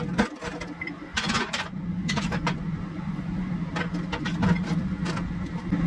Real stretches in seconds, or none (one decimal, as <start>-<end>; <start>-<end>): 0.0-1.1; 3.5-5.9